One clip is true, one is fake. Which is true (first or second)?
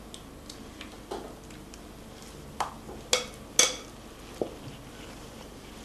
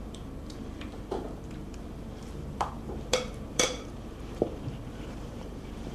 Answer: first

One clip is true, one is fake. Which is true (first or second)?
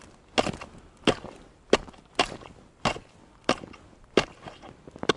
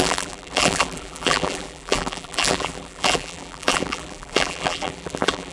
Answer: first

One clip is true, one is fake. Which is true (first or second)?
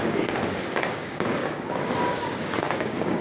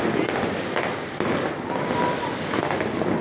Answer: second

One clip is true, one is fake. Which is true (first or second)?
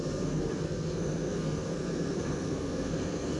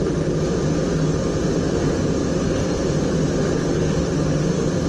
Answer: second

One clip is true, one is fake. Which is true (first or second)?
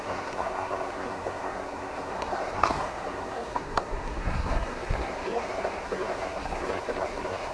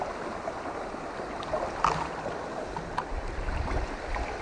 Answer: second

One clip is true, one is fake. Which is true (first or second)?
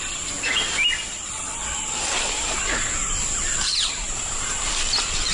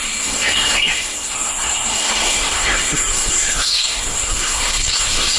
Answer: first